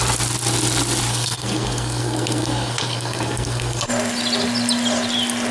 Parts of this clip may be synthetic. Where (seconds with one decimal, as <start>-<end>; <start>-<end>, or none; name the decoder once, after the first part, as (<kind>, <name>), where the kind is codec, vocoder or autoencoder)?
1.1-3.9 (codec, SNAC)